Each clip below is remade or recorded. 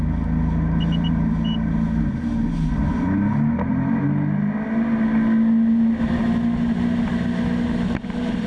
recorded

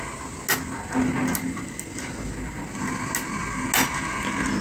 recorded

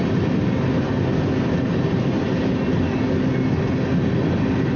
recorded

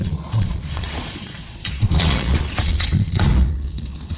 remade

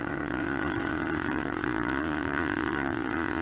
remade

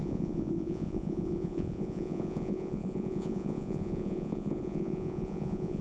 remade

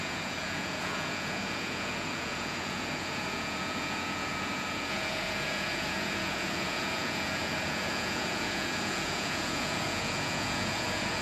remade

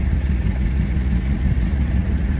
remade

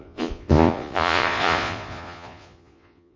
remade